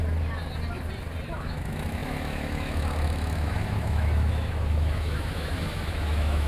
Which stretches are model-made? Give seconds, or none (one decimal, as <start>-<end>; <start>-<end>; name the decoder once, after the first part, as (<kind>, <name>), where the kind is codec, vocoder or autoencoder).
1.3-6.5 (autoencoder, DAC-VAE)